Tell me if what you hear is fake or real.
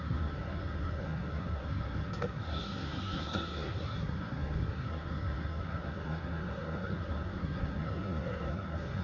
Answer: fake